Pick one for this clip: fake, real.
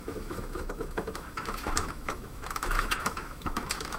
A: fake